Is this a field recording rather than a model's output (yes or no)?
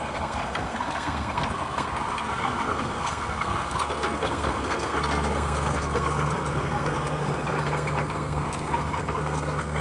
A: no